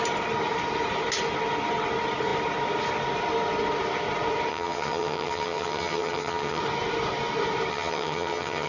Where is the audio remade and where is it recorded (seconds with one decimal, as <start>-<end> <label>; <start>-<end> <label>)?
0.0-4.5 recorded; 4.5-6.6 remade; 6.6-7.7 recorded; 7.7-8.7 remade